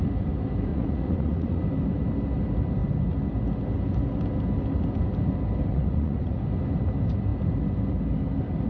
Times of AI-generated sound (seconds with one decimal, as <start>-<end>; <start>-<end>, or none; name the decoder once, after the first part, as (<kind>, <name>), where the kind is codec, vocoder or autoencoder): 0.7-1.6 (vocoder, Vocos); 5.7-6.4